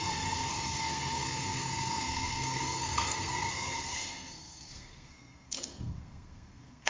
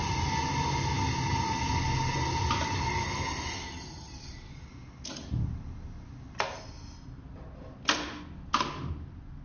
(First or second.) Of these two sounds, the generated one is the first